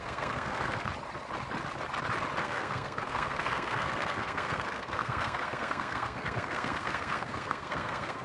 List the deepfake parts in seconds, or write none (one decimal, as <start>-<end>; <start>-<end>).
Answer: 0.0-0.9; 2.4-8.2

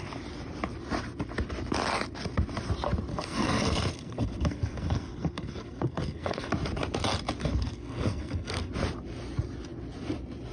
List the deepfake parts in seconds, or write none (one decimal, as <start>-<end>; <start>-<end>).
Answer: 3.1-6.5; 7.4-8.7